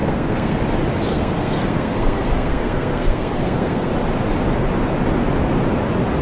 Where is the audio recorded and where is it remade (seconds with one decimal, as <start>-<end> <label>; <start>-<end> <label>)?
0.0-0.6 remade; 0.6-1.1 recorded; 1.1-3.9 remade; 3.9-6.2 recorded

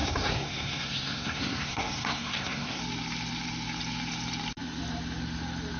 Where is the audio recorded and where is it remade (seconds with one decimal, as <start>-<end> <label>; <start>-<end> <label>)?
0.0-2.8 remade; 2.8-5.8 recorded

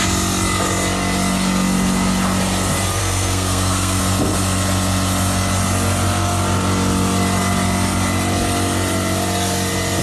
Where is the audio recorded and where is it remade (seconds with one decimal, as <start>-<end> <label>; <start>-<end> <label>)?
0.0-3.0 recorded; 3.0-4.0 remade; 4.0-10.0 recorded

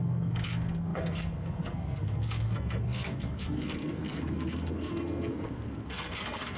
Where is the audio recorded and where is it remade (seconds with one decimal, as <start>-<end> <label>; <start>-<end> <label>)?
0.0-6.6 remade

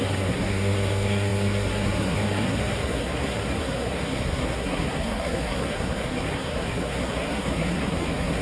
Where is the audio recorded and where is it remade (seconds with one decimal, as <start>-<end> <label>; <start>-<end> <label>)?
0.0-8.4 remade